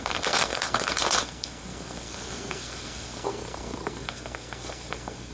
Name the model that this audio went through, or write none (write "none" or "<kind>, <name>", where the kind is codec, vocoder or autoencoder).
codec, SNAC